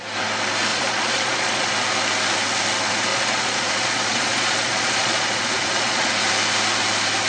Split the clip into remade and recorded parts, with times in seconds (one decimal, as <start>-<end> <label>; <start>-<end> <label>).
0.0-0.7 recorded; 0.7-1.7 remade; 1.7-3.1 recorded; 3.1-6.1 remade; 6.1-7.3 recorded